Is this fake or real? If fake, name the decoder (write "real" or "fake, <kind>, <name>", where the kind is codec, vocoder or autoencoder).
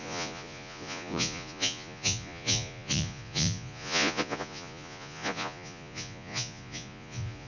fake, vocoder, Vocos